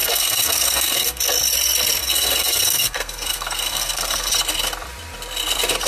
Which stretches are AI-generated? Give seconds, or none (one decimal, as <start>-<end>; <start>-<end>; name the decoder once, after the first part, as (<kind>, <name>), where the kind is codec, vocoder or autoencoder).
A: 0.0-1.2 (codec, SNAC); 2.0-4.3

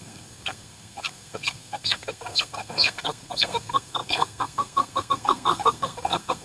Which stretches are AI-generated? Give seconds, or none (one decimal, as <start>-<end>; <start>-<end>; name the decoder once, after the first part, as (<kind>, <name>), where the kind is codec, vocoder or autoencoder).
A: 0.0-6.4 (codec, SNAC)

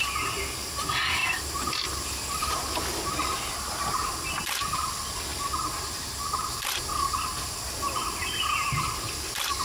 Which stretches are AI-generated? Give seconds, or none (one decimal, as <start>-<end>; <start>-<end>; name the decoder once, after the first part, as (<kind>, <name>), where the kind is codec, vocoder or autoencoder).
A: none

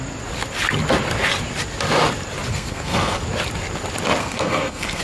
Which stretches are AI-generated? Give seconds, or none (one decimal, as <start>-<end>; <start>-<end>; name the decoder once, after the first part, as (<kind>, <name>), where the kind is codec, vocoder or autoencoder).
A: 2.5-3.2 (codec, SNAC); 4.2-5.0

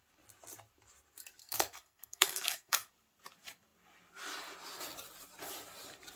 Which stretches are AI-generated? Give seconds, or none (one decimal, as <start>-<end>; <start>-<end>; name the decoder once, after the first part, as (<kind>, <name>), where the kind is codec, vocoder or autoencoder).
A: 1.4-2.9 (codec, SNAC)